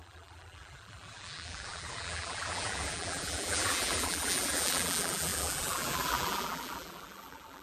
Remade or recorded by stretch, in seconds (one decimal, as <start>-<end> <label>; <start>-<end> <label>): 0.0-7.6 remade